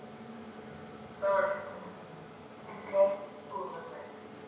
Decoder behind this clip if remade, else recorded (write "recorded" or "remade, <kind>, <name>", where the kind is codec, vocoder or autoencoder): recorded